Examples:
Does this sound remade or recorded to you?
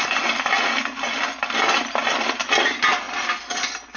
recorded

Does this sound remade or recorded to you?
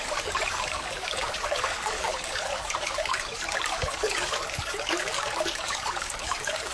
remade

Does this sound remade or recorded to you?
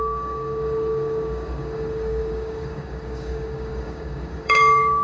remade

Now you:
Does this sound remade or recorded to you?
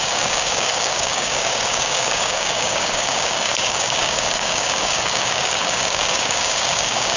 remade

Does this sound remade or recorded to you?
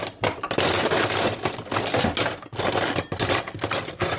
recorded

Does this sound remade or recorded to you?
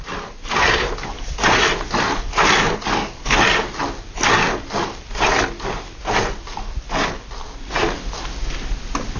recorded